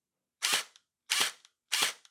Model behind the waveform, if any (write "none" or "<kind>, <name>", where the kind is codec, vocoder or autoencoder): none